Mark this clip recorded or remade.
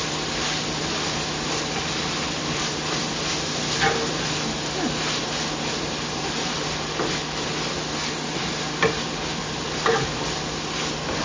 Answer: recorded